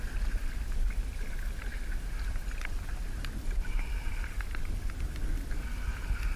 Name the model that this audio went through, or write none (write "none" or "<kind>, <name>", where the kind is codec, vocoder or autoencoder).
none